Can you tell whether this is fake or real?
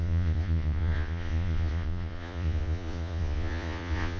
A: fake